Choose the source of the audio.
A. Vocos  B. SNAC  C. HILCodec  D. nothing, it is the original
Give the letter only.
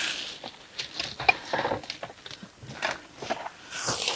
D